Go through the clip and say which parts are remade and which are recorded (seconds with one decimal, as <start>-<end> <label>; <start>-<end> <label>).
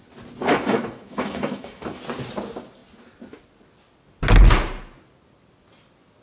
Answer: 0.0-0.4 recorded; 0.4-2.0 remade; 2.0-6.2 recorded